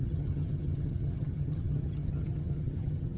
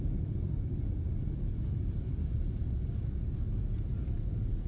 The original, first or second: second